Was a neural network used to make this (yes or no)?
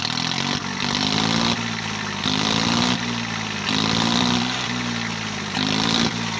yes